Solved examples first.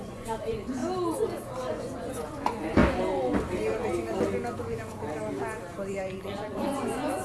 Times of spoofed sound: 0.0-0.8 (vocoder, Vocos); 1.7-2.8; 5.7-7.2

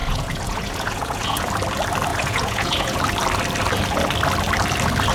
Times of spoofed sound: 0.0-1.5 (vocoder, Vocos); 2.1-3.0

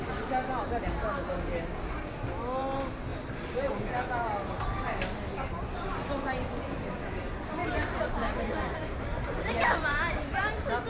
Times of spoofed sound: 3.1-3.7 (vocoder, BigVGAN v2); 7.6-10.5